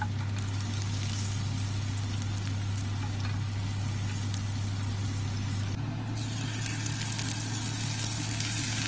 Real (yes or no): yes